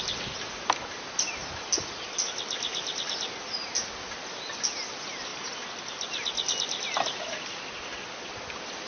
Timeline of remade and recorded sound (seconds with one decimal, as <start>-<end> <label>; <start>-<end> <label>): 0.0-8.9 recorded